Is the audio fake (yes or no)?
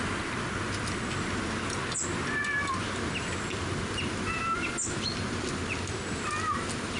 no